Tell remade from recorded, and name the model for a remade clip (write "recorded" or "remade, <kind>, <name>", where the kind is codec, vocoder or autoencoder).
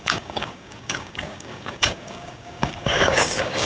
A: remade, codec, DAC